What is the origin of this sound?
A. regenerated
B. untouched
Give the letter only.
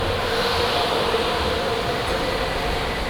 B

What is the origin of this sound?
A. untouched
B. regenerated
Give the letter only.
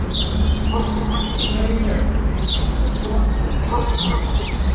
A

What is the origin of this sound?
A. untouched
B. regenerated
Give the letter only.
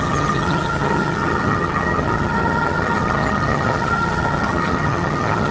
B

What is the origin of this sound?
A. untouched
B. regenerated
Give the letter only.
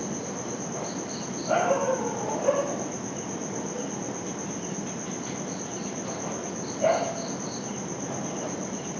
A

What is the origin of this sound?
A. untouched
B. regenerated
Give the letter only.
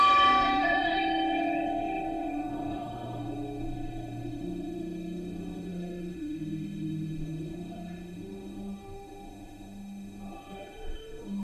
B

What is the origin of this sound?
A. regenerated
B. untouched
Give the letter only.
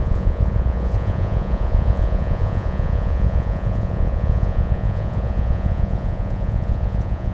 A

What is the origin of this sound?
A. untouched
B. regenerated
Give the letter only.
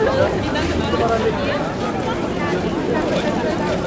A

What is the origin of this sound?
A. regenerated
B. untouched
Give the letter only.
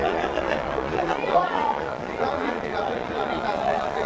A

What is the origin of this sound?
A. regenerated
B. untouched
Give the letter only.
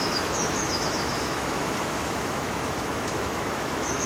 A